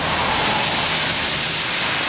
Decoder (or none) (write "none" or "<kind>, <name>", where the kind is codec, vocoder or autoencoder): none